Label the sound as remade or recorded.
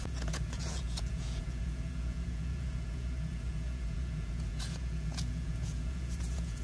remade